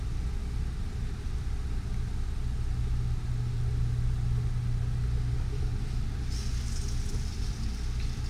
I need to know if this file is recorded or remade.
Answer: recorded